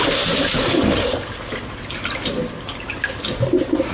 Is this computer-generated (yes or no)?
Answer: no